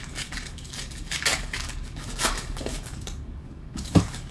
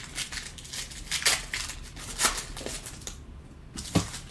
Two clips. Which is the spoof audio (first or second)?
first